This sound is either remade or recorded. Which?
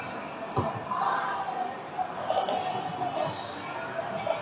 recorded